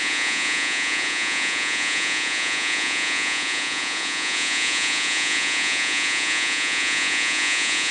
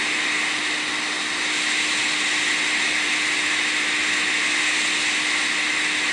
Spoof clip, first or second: first